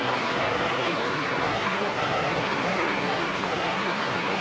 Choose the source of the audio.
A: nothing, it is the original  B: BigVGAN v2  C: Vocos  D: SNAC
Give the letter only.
D